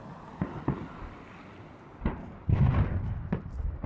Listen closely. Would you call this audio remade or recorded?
recorded